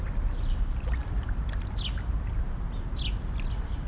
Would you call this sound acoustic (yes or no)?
yes